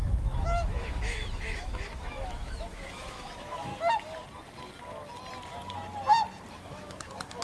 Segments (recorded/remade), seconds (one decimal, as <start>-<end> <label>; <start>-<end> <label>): 0.0-3.7 remade; 3.7-6.5 recorded; 6.5-7.4 remade